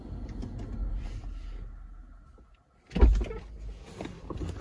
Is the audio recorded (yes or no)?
yes